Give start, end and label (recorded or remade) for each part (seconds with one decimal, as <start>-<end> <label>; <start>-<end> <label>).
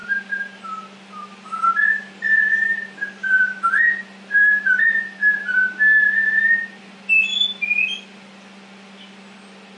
0.0-9.8 recorded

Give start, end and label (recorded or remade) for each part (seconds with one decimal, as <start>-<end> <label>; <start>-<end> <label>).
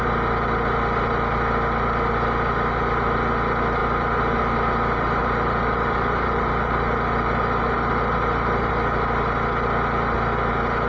0.0-5.2 recorded; 5.2-8.7 remade; 8.7-10.9 recorded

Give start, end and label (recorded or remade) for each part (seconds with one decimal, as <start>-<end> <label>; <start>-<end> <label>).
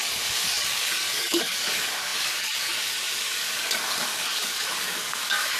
0.0-5.6 remade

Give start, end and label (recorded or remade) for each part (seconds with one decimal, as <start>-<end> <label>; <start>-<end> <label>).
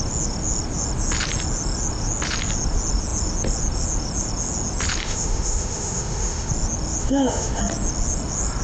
0.0-5.0 recorded; 5.0-6.5 remade; 6.5-7.0 recorded; 7.0-7.6 remade; 7.6-8.6 recorded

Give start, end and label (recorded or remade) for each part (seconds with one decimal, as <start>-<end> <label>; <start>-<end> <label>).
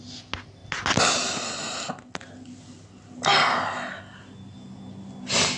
0.0-5.6 recorded